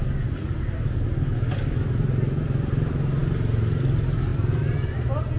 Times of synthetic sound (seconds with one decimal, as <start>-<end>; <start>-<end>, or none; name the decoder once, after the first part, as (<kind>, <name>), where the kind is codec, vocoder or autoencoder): none